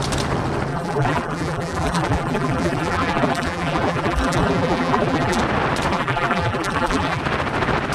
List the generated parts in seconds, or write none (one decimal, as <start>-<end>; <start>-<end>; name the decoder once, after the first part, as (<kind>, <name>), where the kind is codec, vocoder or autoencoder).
0.7-5.4 (vocoder, BigVGAN v2); 5.9-7.2

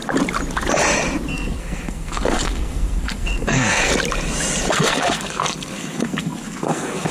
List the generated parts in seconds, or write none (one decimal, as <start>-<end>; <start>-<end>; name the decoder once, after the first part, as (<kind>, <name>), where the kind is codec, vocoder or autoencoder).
1.3-3.9 (codec, SNAC); 4.7-7.1

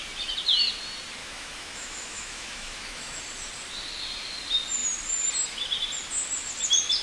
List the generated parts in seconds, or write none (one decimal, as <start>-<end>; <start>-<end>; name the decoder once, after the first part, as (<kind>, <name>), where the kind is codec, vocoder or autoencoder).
1.2-3.2 (autoencoder, DAC-VAE)

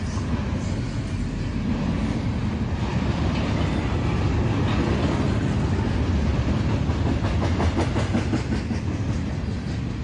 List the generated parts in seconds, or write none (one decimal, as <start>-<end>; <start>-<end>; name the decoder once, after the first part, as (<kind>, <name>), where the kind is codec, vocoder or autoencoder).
2.9-4.0 (vocoder, BigVGAN v2); 6.3-6.9